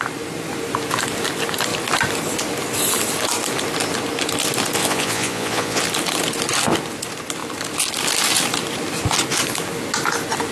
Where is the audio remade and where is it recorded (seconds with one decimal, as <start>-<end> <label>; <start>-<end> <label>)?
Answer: 0.0-4.8 recorded; 4.8-5.8 remade; 5.8-10.5 recorded